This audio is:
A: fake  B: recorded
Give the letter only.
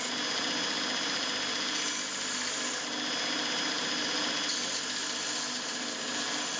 B